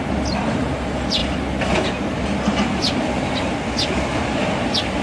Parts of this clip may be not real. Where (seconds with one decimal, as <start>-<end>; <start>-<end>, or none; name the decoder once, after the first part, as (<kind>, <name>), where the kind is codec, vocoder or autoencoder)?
none

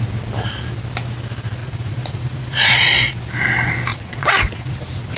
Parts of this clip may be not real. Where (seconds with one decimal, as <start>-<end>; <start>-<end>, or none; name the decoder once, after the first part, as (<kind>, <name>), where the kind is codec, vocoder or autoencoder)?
1.6-3.2 (vocoder, Vocos); 3.9-5.2

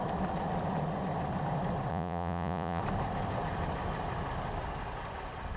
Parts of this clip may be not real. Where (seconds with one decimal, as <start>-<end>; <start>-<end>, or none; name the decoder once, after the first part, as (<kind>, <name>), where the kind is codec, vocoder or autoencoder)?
1.9-2.8 (vocoder, Vocos)

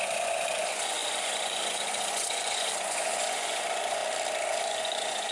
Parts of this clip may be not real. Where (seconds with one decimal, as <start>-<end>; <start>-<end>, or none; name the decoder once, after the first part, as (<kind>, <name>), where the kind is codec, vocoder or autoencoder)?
0.0-4.0 (vocoder, Vocos); 4.5-5.3